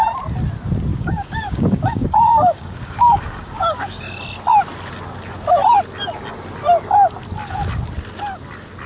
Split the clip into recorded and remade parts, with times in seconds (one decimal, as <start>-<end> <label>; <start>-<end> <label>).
0.0-0.9 recorded; 0.9-4.0 remade; 4.0-8.9 recorded